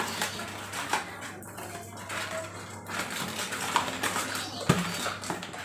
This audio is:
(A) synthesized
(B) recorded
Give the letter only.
B